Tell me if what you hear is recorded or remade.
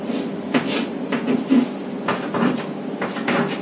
recorded